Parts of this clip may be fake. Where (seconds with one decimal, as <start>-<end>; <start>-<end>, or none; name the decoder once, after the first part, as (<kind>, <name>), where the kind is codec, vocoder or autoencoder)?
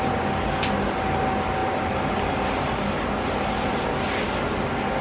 none